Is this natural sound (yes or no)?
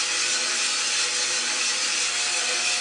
yes